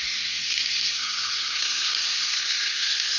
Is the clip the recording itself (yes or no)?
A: no